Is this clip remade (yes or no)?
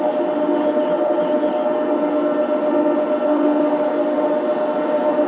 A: no